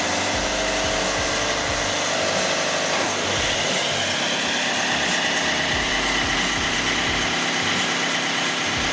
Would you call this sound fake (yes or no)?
no